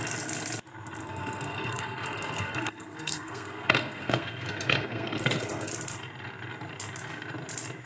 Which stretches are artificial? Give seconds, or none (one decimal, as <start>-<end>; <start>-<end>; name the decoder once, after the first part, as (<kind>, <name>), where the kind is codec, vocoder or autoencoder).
1.0-5.7 (codec, SNAC)